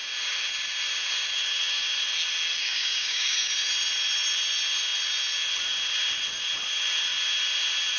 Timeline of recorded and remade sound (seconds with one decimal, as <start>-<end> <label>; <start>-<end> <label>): 0.0-2.6 recorded; 2.6-3.5 remade; 3.5-8.0 recorded